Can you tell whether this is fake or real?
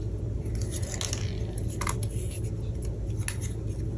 real